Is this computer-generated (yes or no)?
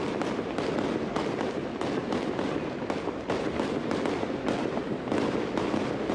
no